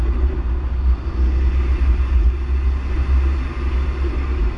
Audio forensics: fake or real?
real